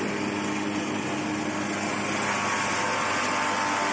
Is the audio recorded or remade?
recorded